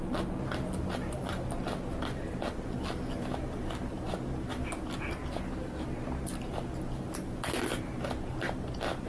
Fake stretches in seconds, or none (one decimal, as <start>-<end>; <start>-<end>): none